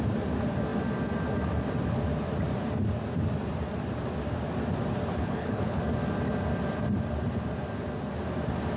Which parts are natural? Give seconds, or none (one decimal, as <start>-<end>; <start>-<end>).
0.0-5.2; 5.8-8.8